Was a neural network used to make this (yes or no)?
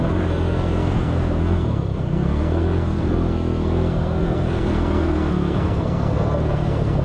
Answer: yes